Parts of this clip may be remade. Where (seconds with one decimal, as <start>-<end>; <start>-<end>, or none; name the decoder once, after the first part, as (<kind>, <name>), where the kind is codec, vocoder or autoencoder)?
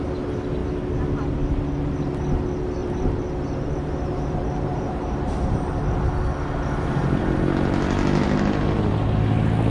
2.8-5.7 (vocoder, BigVGAN v2)